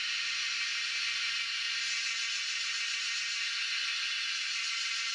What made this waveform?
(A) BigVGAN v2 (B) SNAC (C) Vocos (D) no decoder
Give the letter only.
D